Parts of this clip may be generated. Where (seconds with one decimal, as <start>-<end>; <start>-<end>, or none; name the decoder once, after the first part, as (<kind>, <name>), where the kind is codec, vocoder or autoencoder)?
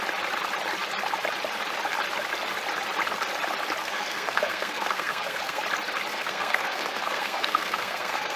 3.8-5.6 (codec, SNAC); 6.1-8.4